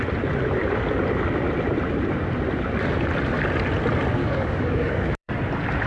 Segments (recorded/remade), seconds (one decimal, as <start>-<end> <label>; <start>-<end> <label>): 0.0-4.2 recorded; 4.2-5.3 remade; 5.3-5.9 recorded